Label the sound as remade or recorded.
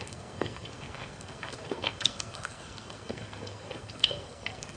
remade